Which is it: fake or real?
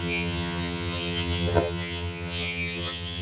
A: fake